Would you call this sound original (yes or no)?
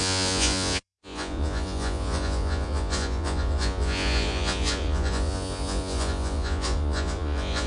no